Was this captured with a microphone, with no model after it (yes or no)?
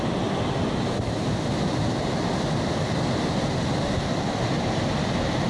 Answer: yes